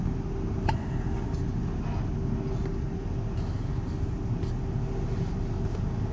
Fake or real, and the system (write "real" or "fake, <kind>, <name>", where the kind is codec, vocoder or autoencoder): real